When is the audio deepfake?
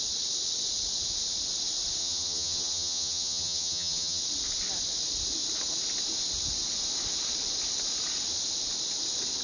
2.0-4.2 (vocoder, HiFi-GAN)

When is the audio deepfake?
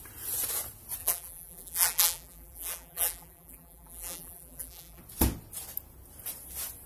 1.0-5.0 (vocoder, BigVGAN v2)